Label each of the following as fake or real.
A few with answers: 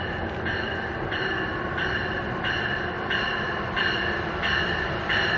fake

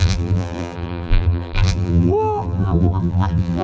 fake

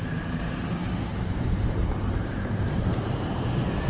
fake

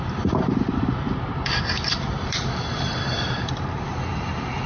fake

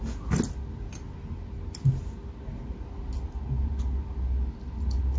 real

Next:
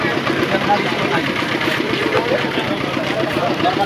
fake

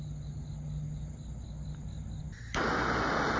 real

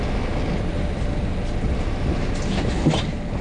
real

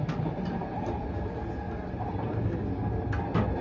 real